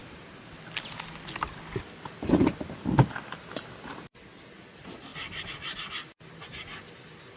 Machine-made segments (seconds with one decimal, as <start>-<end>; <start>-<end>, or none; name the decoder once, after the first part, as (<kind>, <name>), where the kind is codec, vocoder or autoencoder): none